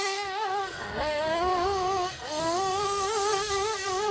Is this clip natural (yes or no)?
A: no